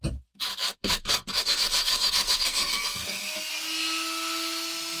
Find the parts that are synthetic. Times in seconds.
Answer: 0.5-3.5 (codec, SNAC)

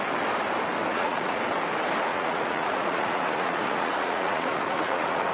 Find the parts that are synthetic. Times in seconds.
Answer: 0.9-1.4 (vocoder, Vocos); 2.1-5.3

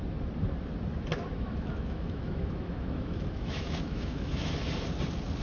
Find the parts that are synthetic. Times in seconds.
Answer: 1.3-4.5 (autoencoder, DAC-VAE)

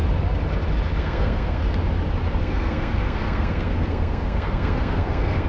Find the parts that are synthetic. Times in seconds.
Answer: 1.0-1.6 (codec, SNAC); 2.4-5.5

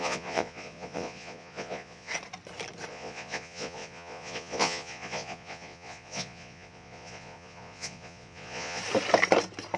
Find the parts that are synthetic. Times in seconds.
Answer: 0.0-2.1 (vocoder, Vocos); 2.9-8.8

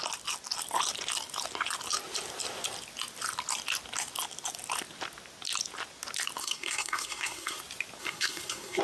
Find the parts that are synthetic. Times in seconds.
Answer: 6.4-7.6 (codec, SNAC); 8.0-8.8

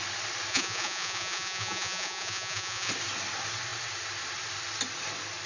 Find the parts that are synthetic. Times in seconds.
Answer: 0.5-2.9 (vocoder, Vocos)